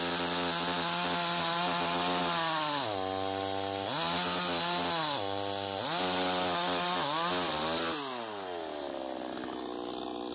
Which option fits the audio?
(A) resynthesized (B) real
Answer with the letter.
B